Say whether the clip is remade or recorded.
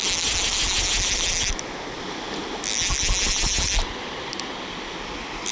recorded